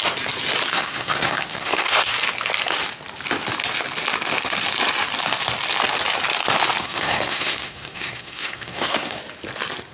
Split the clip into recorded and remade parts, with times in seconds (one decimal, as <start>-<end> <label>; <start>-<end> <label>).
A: 0.0-0.7 recorded; 0.7-2.1 remade; 2.1-6.8 recorded; 6.8-9.2 remade; 9.2-9.9 recorded